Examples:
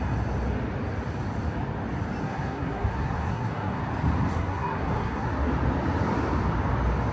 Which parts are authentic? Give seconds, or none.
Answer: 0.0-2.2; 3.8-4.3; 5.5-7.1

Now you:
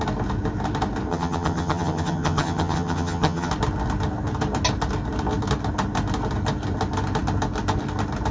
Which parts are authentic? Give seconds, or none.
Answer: 0.0-1.1; 3.5-8.3